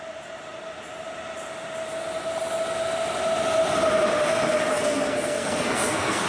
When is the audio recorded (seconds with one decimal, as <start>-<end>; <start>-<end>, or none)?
0.0-4.7